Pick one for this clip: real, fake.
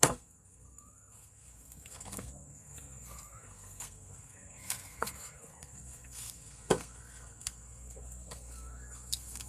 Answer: fake